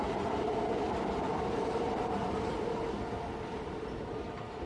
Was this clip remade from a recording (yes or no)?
no